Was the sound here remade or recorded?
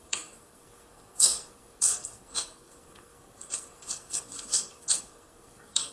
remade